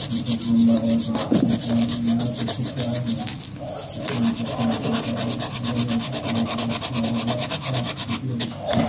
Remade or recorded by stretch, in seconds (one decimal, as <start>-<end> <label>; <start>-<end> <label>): 0.0-8.9 recorded